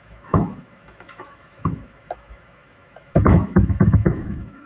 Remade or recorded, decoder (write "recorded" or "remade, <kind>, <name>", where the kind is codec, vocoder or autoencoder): remade, autoencoder, DAC-VAE